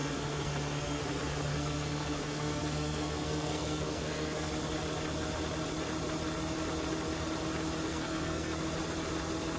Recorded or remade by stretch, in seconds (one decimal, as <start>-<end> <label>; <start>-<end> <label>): 0.0-1.0 remade; 1.0-1.5 recorded; 1.5-4.5 remade; 4.5-7.9 recorded; 7.9-8.6 remade; 8.6-9.6 recorded